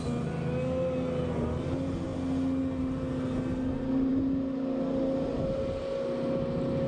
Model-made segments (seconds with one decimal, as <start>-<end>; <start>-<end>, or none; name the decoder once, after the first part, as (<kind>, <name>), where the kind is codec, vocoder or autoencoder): none